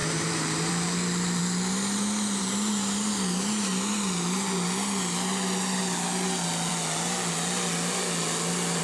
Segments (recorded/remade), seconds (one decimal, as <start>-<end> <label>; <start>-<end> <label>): 0.0-0.7 remade; 0.7-8.8 recorded